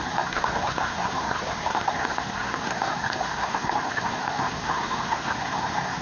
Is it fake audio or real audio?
fake